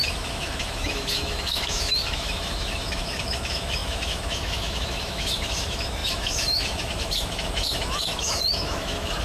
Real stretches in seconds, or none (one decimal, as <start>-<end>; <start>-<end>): none